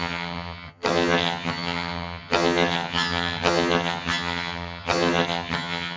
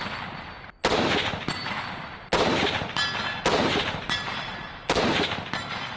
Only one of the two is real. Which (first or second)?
second